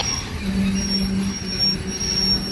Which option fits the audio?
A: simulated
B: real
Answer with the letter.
B